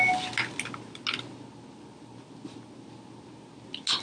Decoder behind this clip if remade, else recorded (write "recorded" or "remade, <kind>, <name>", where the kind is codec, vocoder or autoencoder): recorded